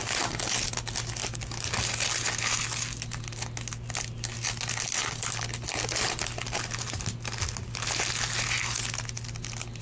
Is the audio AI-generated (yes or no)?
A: no